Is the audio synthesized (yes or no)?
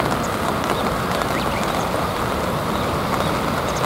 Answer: no